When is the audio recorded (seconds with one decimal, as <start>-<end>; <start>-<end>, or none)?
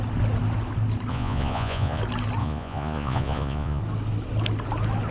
0.0-1.1; 2.0-2.4; 3.8-5.1